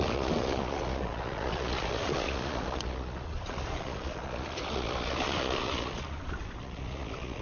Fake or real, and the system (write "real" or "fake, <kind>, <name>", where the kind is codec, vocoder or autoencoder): fake, vocoder, Vocos